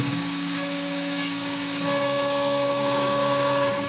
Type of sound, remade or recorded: remade